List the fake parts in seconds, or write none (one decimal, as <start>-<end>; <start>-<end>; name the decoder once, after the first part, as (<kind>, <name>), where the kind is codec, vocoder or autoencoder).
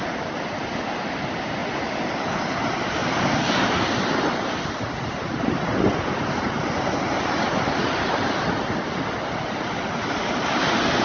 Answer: none